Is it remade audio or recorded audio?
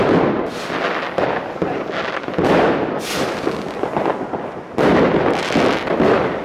recorded